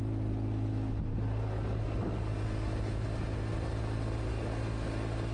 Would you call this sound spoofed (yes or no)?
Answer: no